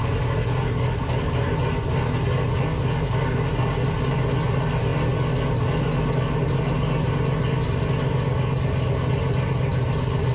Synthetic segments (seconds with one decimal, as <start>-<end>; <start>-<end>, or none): none